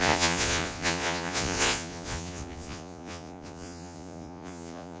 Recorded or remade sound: remade